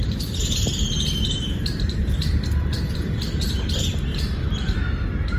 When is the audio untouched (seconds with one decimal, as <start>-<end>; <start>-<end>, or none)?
3.2-4.1; 4.8-5.4